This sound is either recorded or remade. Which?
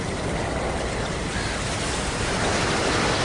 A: recorded